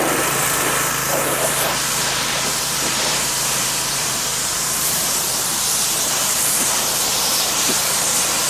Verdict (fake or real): fake